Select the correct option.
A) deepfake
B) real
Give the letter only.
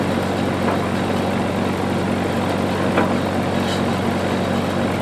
B